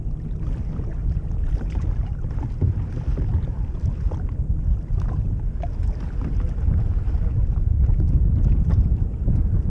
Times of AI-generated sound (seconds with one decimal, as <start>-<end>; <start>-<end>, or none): 1.0-2.6